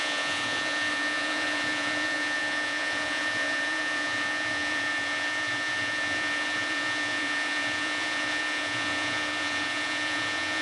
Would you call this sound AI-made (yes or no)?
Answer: yes